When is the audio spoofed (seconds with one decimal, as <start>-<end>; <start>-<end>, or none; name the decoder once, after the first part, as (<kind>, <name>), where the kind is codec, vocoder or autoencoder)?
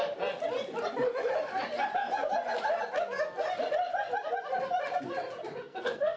5.5-6.2 (codec, SNAC)